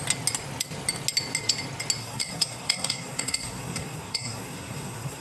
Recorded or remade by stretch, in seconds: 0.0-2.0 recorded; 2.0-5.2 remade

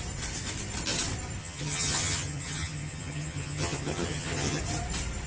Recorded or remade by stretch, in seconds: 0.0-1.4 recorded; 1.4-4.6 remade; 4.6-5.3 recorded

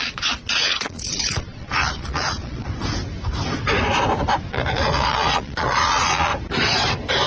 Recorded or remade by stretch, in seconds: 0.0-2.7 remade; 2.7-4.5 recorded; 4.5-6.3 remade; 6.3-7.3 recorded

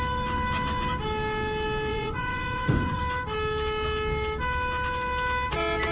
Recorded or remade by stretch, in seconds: 0.0-1.9 recorded; 1.9-3.0 remade; 3.0-5.9 recorded

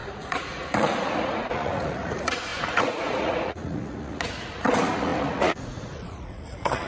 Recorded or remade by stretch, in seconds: 0.0-6.9 remade

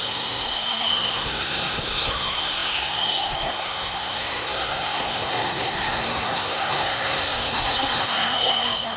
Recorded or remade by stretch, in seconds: 0.0-9.0 remade

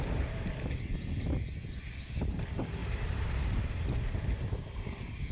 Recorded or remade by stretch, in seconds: 0.0-2.8 recorded; 2.8-5.3 remade

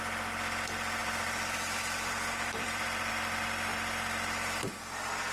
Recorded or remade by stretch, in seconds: 0.0-1.0 recorded; 1.0-3.1 remade; 3.1-5.3 recorded